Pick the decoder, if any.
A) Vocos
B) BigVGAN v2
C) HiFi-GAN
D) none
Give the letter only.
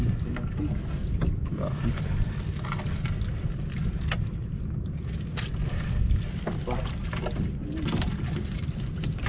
D